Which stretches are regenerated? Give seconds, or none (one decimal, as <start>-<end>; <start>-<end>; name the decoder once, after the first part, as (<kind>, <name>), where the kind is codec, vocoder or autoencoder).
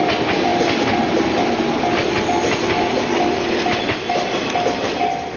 none